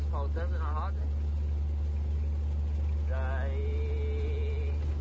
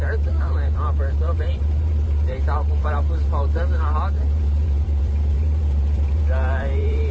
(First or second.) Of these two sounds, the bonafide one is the first